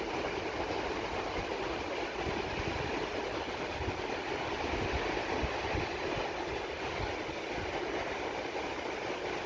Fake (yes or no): no